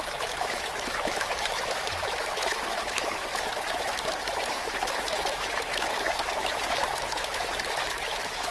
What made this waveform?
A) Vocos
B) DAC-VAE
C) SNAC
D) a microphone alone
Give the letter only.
B